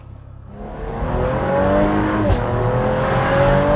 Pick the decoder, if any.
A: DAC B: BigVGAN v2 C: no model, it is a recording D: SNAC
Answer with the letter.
A